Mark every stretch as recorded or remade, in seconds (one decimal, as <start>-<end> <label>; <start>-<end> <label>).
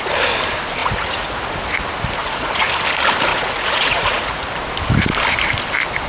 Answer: 0.0-0.8 recorded; 0.8-1.4 remade; 1.4-2.2 recorded; 2.2-2.7 remade; 2.7-3.3 recorded; 3.3-4.5 remade; 4.5-6.1 recorded